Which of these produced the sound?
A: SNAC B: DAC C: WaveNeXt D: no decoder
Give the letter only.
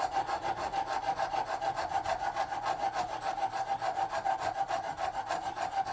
D